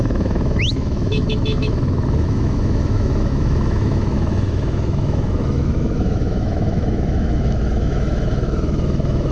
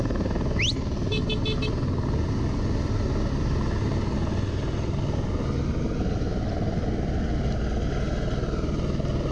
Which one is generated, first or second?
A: first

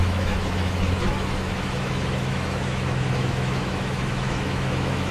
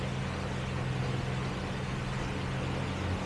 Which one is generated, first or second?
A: first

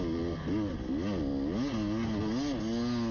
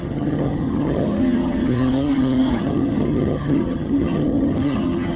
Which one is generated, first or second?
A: second